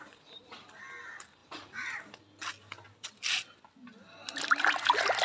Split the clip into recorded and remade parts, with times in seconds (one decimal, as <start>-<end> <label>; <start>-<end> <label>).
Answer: 0.0-5.2 recorded